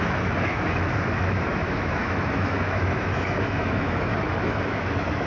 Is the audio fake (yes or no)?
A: yes